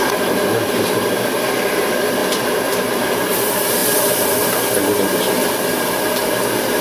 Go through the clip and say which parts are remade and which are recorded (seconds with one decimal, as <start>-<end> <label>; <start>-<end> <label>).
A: 0.0-3.8 remade; 3.8-4.8 recorded; 4.8-6.8 remade